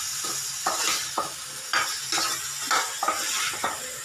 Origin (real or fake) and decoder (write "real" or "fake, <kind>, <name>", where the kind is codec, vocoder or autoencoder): real